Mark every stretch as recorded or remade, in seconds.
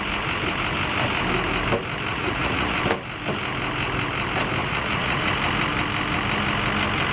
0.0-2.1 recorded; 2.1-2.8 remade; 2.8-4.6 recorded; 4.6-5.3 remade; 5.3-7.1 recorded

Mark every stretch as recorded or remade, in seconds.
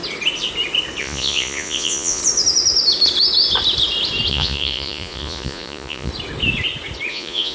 0.0-1.0 recorded; 1.0-2.2 remade; 2.2-4.3 recorded; 4.3-6.1 remade; 6.1-7.1 recorded; 7.1-7.5 remade